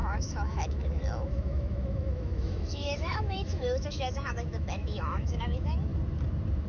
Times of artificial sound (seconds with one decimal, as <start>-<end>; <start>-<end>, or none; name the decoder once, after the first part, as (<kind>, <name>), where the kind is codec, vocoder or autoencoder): 0.0-5.9 (autoencoder, DAC-VAE)